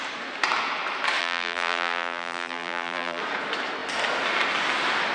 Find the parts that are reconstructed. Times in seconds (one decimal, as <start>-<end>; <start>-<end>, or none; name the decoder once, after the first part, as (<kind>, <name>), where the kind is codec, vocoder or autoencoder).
1.2-3.2 (vocoder, BigVGAN v2)